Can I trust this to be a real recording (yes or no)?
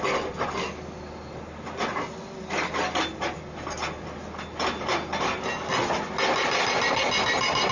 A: yes